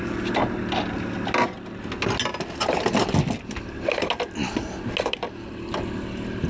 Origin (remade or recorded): recorded